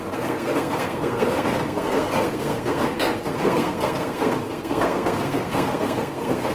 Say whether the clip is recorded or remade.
remade